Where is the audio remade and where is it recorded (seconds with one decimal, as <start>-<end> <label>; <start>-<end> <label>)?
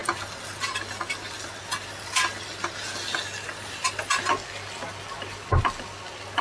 0.0-6.4 recorded